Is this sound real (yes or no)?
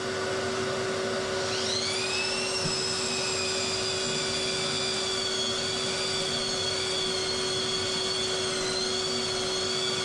yes